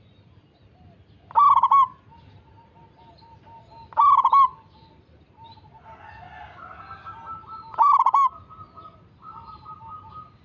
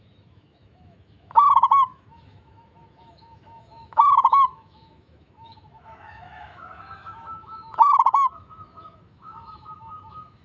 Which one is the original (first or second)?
first